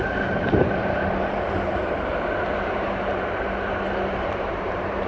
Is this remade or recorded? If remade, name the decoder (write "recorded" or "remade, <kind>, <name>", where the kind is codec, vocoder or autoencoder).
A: remade, vocoder, BigVGAN v2